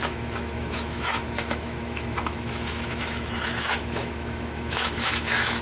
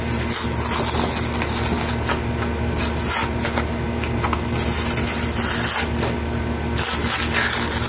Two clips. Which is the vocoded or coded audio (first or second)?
first